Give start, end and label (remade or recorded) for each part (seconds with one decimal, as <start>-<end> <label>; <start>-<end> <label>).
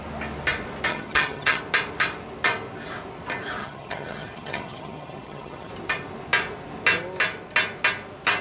0.0-0.9 recorded; 0.9-1.6 remade; 1.6-3.6 recorded; 3.6-5.7 remade; 5.7-8.4 recorded